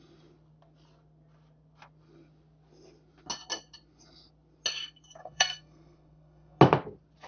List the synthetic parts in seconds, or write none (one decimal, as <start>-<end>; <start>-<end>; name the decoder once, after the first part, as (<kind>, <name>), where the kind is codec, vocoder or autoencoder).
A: 5.2-6.6 (codec, SNAC)